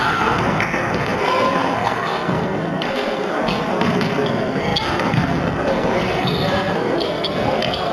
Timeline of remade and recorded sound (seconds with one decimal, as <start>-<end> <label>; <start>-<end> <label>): 0.0-7.9 remade